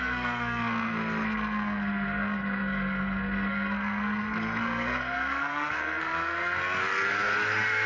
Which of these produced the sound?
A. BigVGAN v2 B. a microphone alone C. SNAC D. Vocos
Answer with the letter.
C